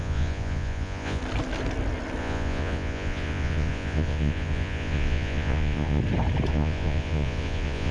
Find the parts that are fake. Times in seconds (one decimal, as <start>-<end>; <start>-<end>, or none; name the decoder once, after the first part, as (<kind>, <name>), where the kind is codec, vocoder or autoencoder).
0.0-1.2 (vocoder, Vocos); 2.2-6.0; 6.5-7.9